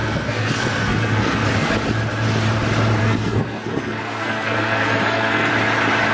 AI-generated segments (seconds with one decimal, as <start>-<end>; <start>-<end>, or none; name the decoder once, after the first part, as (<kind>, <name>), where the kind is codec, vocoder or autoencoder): 0.0-1.7 (codec, SNAC); 3.0-5.5